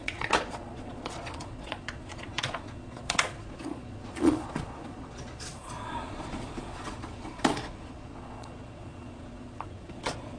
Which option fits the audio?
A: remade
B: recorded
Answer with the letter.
A